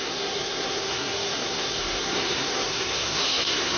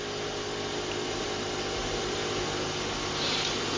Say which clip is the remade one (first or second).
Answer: first